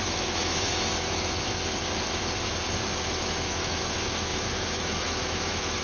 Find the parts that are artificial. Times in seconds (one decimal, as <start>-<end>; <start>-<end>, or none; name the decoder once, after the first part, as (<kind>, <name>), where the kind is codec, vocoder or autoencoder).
0.0-1.6 (autoencoder, DAC-VAE); 3.2-5.8